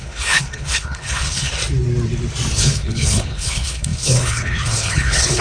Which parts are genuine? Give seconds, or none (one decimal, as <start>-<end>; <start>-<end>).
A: 1.5-2.5